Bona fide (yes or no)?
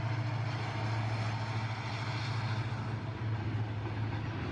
yes